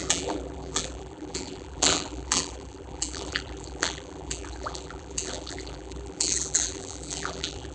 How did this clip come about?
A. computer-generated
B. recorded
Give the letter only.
A